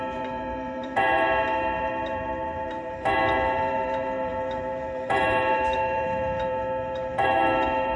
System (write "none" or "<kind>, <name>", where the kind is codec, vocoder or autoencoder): vocoder, BigVGAN v2